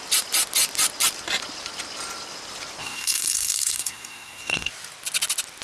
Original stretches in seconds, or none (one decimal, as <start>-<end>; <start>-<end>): 0.0-2.8; 4.7-5.6